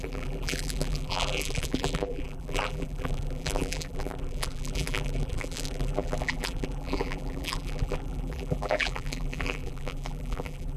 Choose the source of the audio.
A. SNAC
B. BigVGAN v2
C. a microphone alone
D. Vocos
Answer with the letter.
B